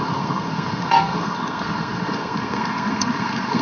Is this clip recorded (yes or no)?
no